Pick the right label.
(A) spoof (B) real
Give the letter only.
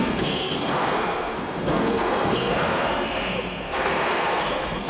A